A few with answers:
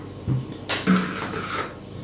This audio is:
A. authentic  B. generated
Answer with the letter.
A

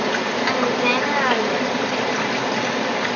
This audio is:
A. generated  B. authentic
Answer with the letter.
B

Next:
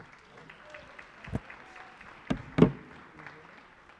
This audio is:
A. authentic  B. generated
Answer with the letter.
A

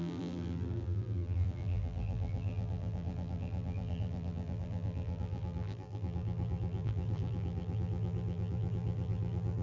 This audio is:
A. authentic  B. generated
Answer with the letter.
B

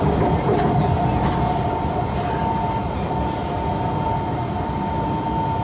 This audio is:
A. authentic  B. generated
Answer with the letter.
A